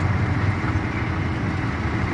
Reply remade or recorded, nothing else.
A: recorded